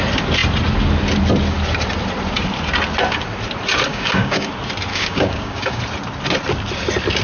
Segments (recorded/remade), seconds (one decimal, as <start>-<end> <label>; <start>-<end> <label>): 0.0-3.9 recorded; 3.9-4.5 remade; 4.5-4.9 recorded; 4.9-5.8 remade; 5.8-7.2 recorded